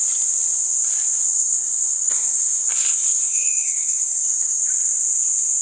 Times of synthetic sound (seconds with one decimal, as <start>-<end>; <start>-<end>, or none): 1.2-4.6